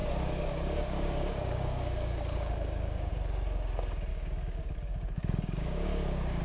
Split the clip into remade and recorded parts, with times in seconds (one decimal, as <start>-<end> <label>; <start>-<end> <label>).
0.0-3.1 remade; 3.1-4.1 recorded; 4.1-6.4 remade

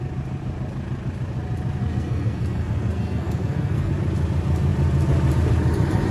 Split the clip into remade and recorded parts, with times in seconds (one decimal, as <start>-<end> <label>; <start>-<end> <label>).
0.0-1.8 recorded; 1.8-3.9 remade; 3.9-6.1 recorded

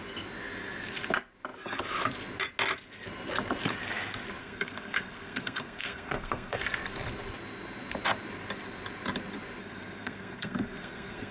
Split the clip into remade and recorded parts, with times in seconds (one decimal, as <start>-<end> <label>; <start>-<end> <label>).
0.0-4.4 recorded; 4.4-6.6 remade; 6.6-9.6 recorded; 9.6-11.3 remade

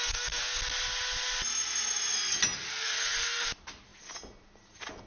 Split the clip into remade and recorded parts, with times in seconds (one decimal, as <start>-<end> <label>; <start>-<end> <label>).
0.0-0.6 remade; 0.6-2.7 recorded; 2.7-3.5 remade; 3.5-5.1 recorded

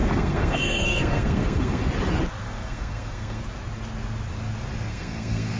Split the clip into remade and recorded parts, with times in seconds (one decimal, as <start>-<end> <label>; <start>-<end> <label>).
0.0-1.9 remade; 1.9-2.4 recorded; 2.4-3.4 remade; 3.4-4.9 recorded; 4.9-5.6 remade

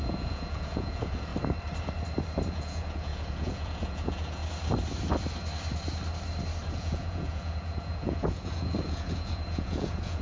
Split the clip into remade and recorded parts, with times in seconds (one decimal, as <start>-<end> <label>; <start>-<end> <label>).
0.0-1.3 remade; 1.3-2.5 recorded; 2.5-4.4 remade; 4.4-6.7 recorded; 6.7-10.2 remade

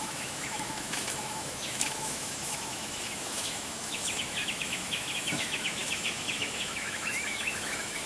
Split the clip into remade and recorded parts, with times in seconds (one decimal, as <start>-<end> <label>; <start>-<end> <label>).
0.0-8.1 remade

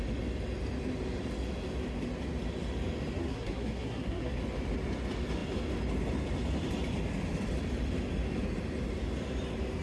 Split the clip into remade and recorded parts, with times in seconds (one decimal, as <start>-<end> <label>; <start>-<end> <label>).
0.0-3.2 recorded; 3.2-4.4 remade; 4.4-9.8 recorded